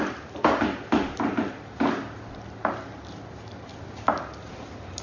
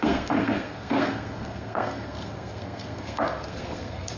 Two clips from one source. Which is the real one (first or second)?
first